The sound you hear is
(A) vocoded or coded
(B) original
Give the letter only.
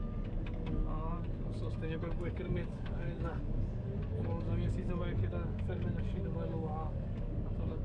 A